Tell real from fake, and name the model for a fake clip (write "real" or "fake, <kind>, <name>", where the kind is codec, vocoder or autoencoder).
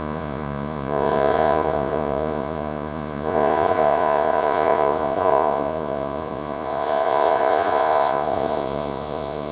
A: fake, vocoder, Vocos